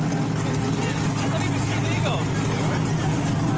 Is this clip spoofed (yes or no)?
no